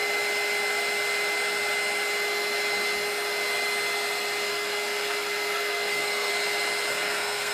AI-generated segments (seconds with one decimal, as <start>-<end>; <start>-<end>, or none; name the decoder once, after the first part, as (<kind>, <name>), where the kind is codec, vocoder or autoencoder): 4.5-6.3 (codec, SNAC); 6.9-7.5